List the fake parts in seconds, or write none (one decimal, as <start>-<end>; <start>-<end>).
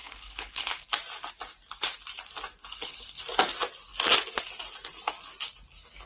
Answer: 0.0-0.7; 2.6-3.2